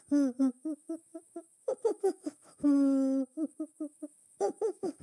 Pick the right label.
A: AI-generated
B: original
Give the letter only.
A